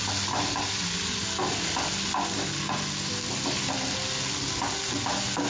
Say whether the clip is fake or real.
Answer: real